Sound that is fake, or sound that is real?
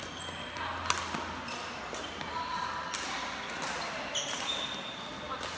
real